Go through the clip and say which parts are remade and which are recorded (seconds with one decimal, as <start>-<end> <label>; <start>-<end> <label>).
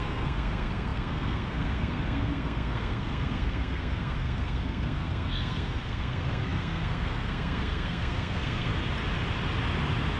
0.0-8.7 remade; 8.7-10.2 recorded